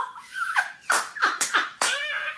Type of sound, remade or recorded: remade